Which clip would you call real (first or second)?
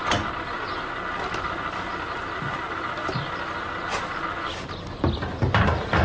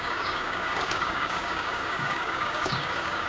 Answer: first